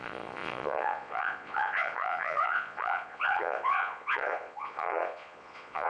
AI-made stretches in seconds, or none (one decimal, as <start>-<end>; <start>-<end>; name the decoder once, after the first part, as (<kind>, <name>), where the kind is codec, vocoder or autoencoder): 0.0-5.9 (vocoder, Vocos)